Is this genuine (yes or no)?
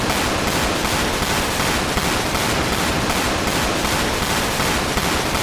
no